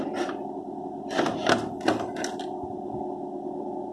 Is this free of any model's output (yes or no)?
yes